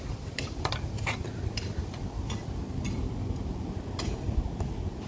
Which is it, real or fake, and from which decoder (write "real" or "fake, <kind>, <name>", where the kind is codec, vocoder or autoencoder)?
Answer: real